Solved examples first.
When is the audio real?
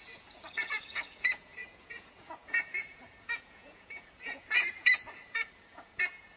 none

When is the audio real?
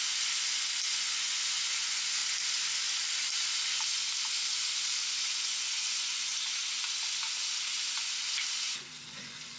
0.0-0.9; 2.2-5.2; 6.3-8.6